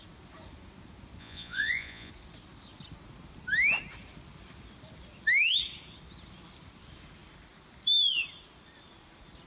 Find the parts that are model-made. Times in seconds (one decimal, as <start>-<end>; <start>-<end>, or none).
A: 1.2-2.1